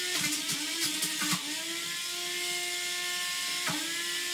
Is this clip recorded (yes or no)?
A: yes